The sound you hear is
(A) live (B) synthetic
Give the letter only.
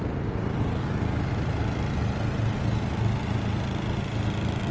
A